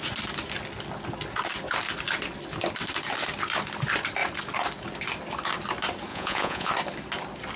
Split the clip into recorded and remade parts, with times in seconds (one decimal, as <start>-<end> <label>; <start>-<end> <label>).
0.0-6.1 recorded; 6.1-6.7 remade; 6.7-7.6 recorded